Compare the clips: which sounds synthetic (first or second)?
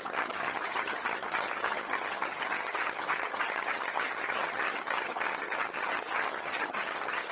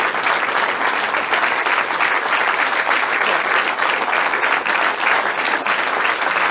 first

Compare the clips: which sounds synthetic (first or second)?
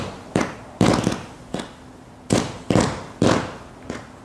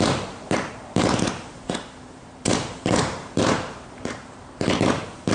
second